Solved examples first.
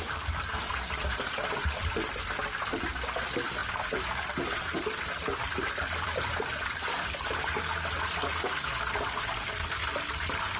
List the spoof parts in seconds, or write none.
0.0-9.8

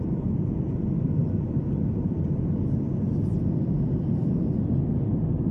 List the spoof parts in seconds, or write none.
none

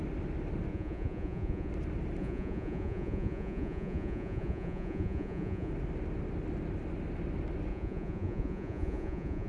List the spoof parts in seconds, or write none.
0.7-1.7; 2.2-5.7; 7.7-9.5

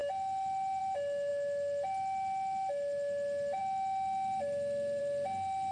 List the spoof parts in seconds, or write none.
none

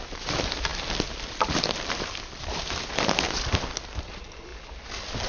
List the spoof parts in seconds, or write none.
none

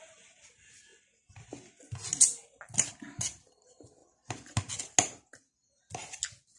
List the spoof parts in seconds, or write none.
none

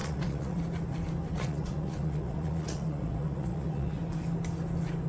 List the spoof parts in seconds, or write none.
0.0-0.6; 1.3-4.0